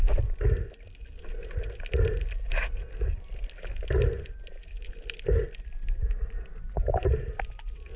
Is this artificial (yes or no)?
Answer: no